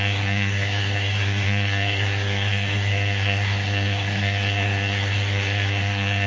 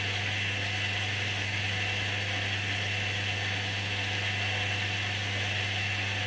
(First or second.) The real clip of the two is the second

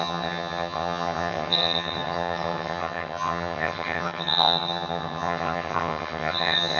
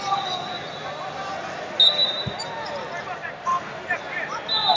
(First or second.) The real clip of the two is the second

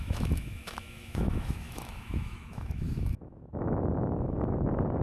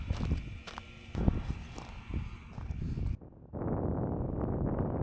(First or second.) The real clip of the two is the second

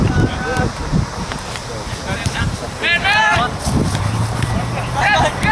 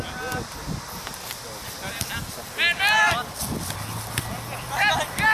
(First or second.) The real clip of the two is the second